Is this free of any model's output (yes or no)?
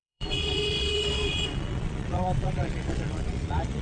no